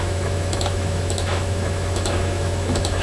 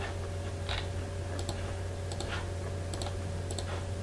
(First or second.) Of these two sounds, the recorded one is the second